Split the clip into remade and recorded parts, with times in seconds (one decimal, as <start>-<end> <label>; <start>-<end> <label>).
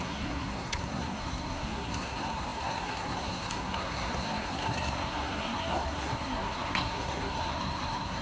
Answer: 0.0-8.2 remade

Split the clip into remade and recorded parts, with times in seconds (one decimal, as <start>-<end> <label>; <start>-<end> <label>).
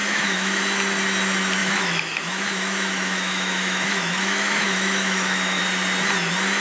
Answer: 0.0-0.6 remade; 0.6-1.6 recorded; 1.6-5.6 remade; 5.6-6.6 recorded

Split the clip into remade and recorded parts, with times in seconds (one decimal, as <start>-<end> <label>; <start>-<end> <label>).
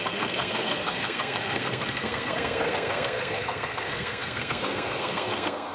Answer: 0.0-5.7 remade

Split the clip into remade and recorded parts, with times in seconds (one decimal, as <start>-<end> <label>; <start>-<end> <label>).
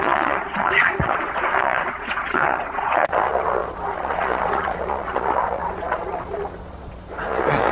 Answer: 0.0-7.7 remade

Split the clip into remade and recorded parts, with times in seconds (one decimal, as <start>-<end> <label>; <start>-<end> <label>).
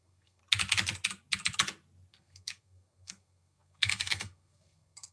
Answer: 0.0-0.4 remade; 0.4-2.1 recorded; 2.1-5.1 remade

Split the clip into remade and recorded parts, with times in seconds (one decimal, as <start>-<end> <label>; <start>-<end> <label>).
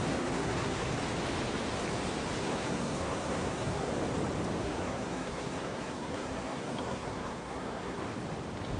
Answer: 0.0-0.9 remade; 0.9-2.4 recorded; 2.4-3.9 remade; 3.9-4.6 recorded; 4.6-8.0 remade; 8.0-8.8 recorded